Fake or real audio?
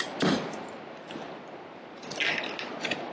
real